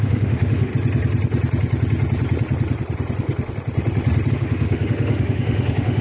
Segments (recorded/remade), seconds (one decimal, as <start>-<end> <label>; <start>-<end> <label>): 0.0-0.7 remade; 0.7-4.3 recorded; 4.3-6.0 remade